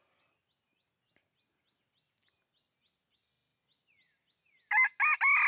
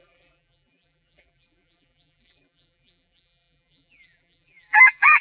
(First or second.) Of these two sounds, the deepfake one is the second